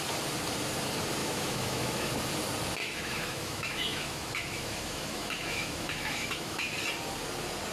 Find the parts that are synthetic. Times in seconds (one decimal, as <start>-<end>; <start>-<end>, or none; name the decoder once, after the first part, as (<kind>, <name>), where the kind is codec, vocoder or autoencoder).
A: 1.2-2.1 (autoencoder, DAC-VAE); 2.8-6.7